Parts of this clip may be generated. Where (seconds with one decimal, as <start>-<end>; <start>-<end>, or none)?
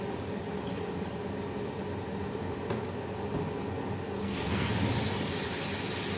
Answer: 4.2-4.7